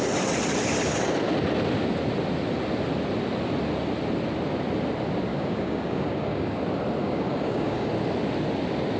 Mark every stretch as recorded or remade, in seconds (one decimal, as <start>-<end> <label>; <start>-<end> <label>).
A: 0.0-5.3 recorded; 5.3-6.6 remade; 6.6-7.0 recorded; 7.0-7.9 remade; 7.9-9.0 recorded